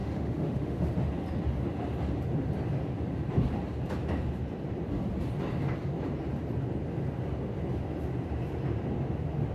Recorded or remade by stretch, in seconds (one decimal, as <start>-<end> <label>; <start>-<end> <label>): 0.0-0.9 remade; 0.9-9.5 recorded